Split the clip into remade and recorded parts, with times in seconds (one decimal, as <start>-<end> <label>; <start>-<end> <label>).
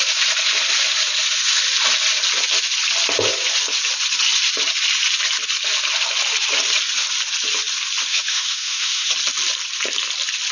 0.0-8.1 recorded; 8.1-9.1 remade; 9.1-10.5 recorded